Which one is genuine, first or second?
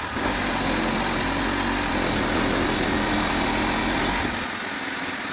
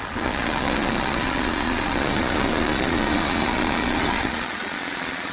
first